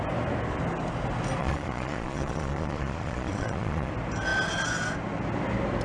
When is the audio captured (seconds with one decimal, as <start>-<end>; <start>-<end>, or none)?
0.0-1.4; 3.9-5.8